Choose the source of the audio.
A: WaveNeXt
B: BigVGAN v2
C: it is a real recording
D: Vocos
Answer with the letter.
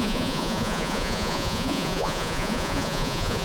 D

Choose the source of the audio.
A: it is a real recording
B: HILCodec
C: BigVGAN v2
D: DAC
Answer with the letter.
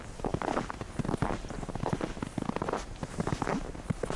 A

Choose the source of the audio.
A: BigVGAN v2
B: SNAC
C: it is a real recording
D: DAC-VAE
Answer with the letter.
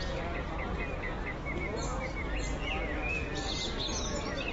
C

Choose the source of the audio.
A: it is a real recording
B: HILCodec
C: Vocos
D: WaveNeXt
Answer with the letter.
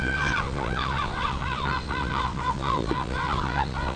D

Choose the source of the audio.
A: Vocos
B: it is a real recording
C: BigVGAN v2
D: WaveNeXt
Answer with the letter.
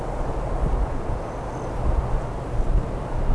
B